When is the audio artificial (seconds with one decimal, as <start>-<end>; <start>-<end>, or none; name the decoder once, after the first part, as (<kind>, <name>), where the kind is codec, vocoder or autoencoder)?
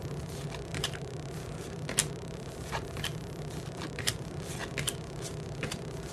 0.7-1.3 (vocoder, BigVGAN v2); 2.0-4.1